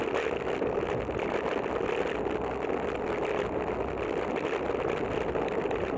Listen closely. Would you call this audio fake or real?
real